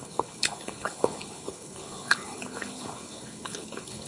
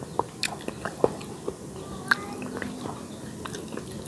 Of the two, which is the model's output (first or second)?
first